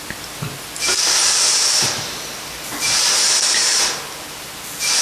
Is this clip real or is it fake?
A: real